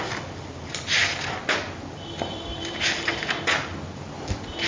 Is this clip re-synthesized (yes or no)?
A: no